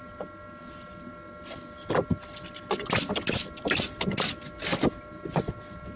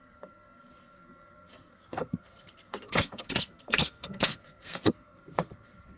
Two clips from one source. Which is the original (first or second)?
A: first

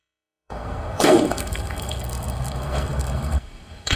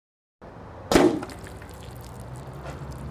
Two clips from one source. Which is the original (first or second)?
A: second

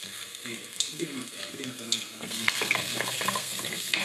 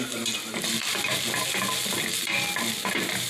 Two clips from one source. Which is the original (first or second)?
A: second